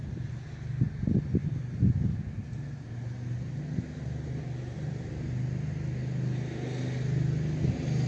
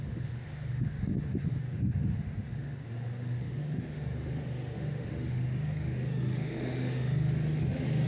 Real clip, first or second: first